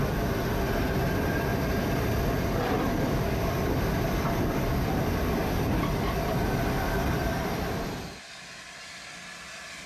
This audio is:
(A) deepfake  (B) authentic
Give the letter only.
A